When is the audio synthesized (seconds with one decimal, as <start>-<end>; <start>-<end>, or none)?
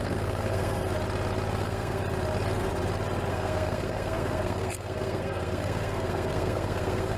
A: 0.0-0.8; 1.6-2.0; 3.3-7.2